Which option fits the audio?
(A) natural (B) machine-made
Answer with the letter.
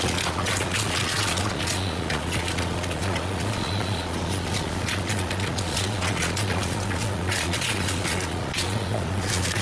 B